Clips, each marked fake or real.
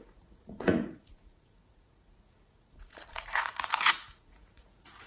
fake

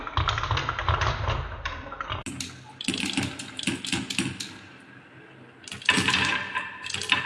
real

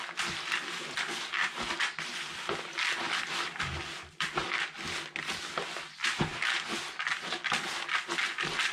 real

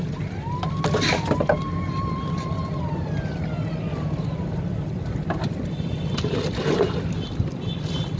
real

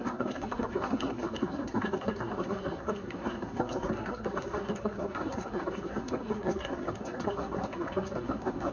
fake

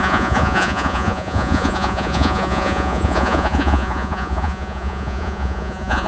fake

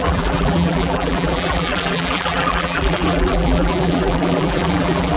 fake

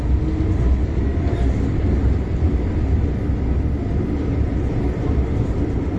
real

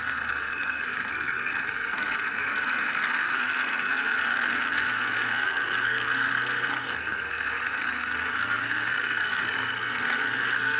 fake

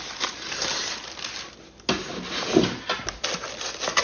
real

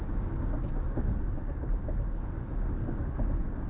fake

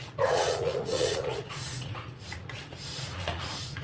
fake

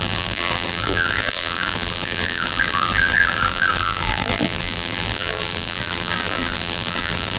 fake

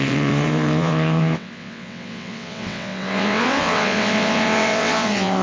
fake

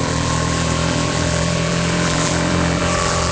fake